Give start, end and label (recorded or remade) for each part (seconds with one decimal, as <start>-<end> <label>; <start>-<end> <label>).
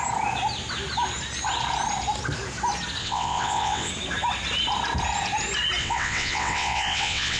0.0-3.0 recorded; 3.0-3.9 remade; 3.9-5.8 recorded; 5.8-7.4 remade